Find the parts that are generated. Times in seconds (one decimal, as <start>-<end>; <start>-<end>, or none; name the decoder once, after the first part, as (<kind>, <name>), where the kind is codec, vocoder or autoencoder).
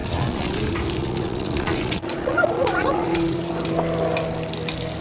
0.0-0.6 (vocoder, Vocos); 1.0-3.5